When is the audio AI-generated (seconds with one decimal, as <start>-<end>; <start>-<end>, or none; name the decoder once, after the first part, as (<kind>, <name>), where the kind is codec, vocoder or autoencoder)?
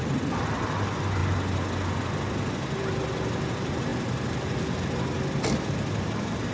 none